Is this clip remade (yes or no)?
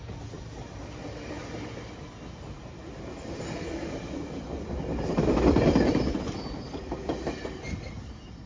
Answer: no